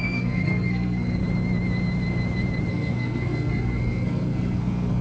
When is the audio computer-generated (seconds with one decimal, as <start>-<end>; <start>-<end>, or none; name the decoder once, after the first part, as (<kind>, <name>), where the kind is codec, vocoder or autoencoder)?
0.0-1.2 (codec, SNAC); 2.7-5.0

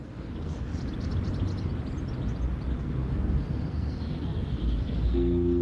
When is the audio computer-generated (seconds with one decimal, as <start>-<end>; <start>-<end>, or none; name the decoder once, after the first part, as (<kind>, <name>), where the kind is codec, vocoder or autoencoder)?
0.0-0.7 (codec, SNAC); 2.8-5.6